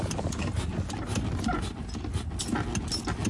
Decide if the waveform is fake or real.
real